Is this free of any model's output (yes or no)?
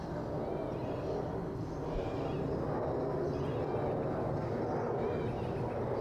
yes